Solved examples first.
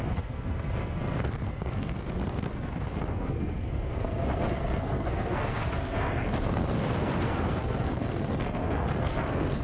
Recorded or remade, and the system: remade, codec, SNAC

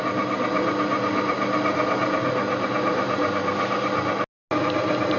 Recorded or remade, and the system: recorded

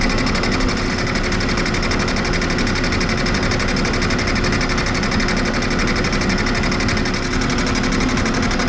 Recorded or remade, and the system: recorded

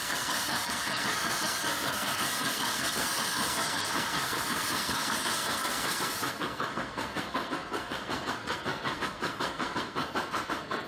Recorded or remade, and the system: remade, codec, SNAC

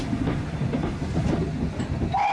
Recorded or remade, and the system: recorded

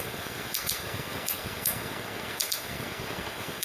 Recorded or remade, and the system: remade, codec, SNAC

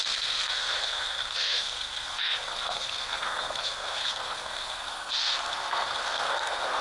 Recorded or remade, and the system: remade, codec, SNAC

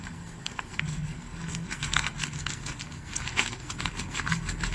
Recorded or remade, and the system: remade, codec, SNAC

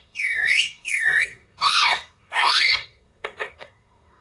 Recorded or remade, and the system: remade, codec, SNAC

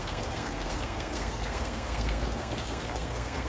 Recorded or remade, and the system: remade, codec, SNAC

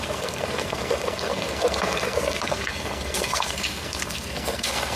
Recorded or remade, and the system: remade, codec, SNAC